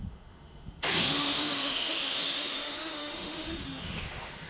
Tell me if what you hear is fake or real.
fake